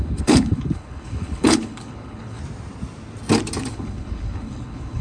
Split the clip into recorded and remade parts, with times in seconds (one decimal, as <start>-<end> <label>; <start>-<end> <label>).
0.0-2.4 remade; 2.4-3.7 recorded; 3.7-5.0 remade